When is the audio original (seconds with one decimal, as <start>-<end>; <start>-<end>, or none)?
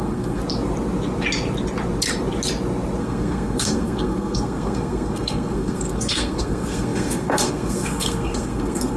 0.4-3.0